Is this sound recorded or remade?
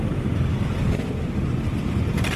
remade